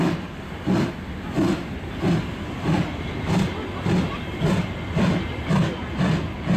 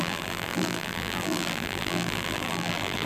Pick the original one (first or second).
first